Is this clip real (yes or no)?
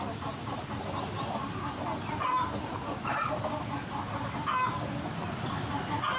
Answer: yes